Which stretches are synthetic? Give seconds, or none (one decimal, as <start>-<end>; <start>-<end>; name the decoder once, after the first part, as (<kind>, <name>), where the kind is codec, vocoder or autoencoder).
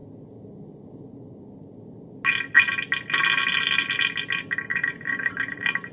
4.7-5.9 (vocoder, Vocos)